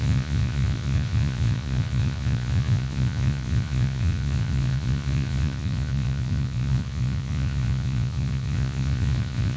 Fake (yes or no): yes